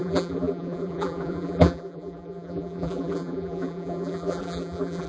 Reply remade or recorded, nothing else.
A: remade